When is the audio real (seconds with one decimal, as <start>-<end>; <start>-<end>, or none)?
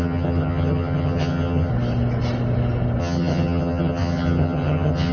1.7-3.0